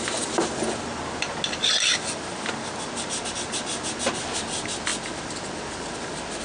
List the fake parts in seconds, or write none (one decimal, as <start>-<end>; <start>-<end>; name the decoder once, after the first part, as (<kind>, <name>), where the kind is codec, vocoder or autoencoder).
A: none